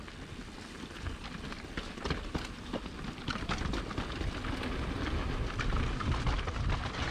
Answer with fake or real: real